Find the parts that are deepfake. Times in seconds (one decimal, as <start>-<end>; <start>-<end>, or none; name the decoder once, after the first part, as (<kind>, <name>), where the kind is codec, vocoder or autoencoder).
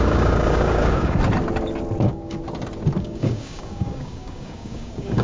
0.0-1.2 (codec, DAC); 2.0-2.4; 3.0-5.2